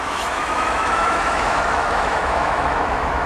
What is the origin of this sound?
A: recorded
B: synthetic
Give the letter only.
B